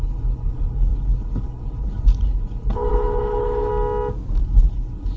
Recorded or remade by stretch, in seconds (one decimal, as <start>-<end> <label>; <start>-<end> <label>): 0.0-3.7 remade; 3.7-4.4 recorded; 4.4-5.2 remade